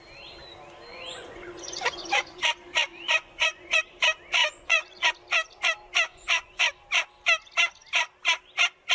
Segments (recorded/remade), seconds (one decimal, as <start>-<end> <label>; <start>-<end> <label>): 0.0-0.9 recorded; 0.9-2.4 remade; 2.4-2.9 recorded; 2.9-3.8 remade; 3.8-4.4 recorded; 4.4-5.1 remade; 5.1-6.1 recorded; 6.1-6.7 remade; 6.7-8.9 recorded